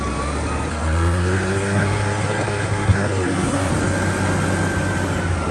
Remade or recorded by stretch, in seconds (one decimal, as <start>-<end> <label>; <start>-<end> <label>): 0.0-0.7 recorded; 0.7-3.7 remade; 3.7-5.5 recorded